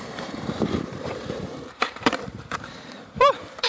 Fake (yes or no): yes